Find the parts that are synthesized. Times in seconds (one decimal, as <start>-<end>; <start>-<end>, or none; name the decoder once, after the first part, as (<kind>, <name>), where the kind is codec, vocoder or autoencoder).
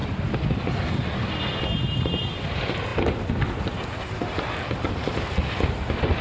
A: none